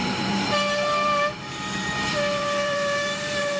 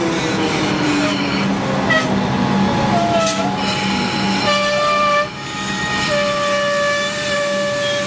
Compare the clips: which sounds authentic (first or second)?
second